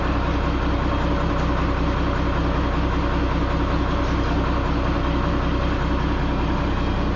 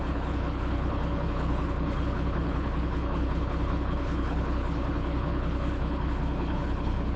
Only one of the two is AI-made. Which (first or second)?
second